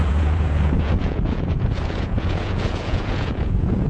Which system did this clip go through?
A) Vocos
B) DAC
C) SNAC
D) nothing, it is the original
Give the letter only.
A